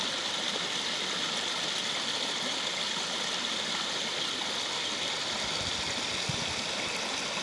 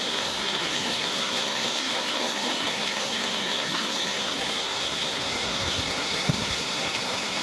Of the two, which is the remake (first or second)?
second